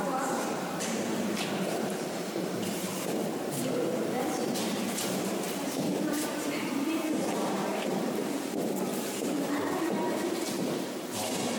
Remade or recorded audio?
remade